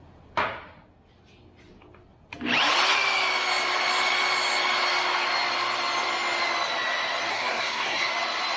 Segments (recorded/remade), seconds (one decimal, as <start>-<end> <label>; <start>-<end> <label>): 0.0-7.3 recorded; 7.3-8.1 remade; 8.1-8.6 recorded